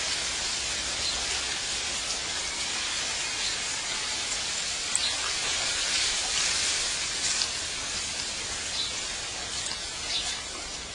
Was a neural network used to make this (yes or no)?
no